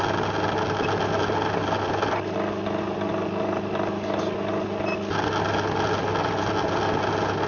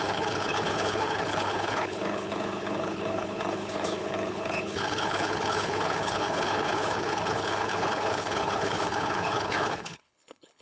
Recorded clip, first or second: first